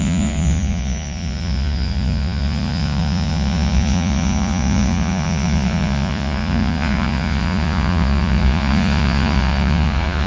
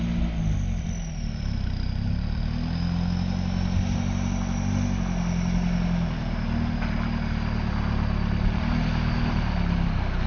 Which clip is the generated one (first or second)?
first